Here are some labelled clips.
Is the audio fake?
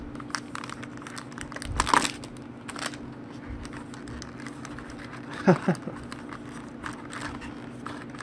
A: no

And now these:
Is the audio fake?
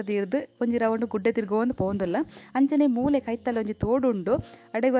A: yes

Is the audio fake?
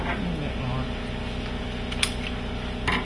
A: no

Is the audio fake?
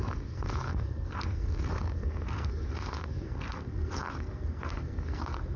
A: yes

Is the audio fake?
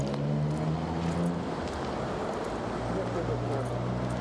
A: no